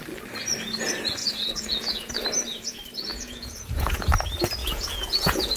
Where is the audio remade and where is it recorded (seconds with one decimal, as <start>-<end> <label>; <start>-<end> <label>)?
0.0-1.2 recorded; 1.2-2.1 remade; 2.1-3.1 recorded; 3.1-4.1 remade; 4.1-4.6 recorded; 4.6-5.6 remade